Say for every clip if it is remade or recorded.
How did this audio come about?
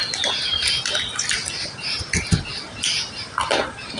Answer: recorded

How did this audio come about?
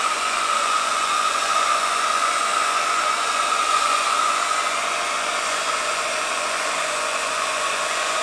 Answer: remade